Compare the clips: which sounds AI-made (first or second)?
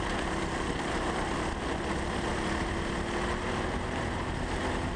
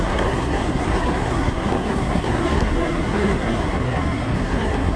second